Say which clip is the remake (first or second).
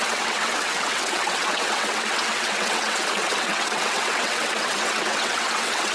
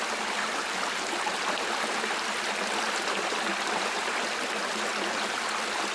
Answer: first